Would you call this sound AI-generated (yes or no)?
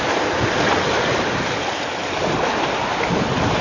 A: yes